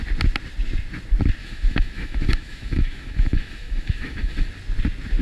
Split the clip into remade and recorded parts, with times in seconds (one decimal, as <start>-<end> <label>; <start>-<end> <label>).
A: 0.0-1.4 recorded; 1.4-4.5 remade; 4.5-5.2 recorded